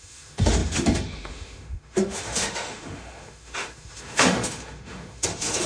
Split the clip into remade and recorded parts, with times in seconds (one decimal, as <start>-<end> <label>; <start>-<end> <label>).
0.0-5.7 remade